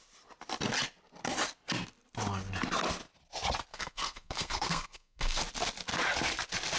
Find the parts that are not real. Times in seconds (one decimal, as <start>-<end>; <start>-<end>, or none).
3.7-5.4